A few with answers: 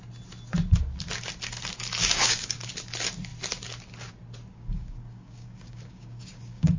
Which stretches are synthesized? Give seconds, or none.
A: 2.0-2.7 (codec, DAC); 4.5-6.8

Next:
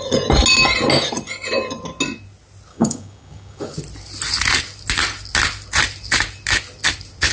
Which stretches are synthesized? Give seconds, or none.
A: 2.7-3.8 (codec, DAC)

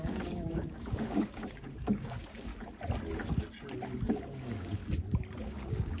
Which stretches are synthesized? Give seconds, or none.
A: 0.0-2.5 (codec, DAC); 4.1-4.8; 5.4-6.0